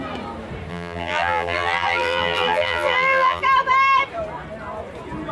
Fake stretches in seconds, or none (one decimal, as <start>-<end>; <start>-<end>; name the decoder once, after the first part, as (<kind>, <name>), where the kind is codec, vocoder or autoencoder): 0.7-3.4 (vocoder, BigVGAN v2)